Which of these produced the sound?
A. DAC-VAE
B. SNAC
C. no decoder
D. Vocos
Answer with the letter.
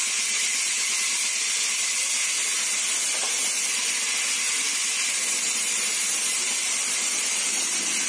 C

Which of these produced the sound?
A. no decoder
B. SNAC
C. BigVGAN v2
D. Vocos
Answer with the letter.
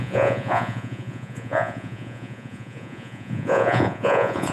D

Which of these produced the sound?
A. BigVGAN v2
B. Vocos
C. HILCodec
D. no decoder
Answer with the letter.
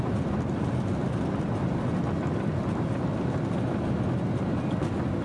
D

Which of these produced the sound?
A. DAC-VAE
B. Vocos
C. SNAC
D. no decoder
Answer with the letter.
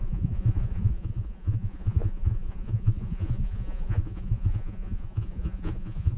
B